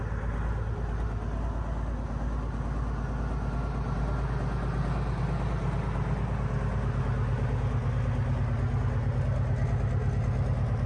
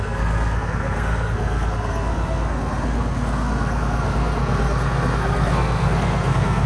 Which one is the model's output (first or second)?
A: second